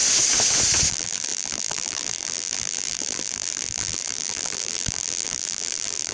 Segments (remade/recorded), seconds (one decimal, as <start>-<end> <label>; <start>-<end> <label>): 0.0-0.9 recorded; 0.9-6.1 remade